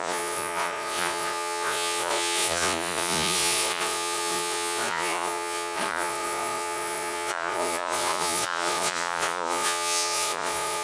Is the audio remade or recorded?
remade